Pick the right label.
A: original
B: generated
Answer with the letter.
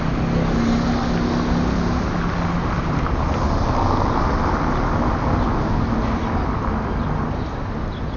A